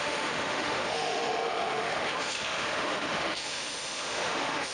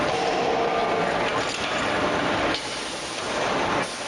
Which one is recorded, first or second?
second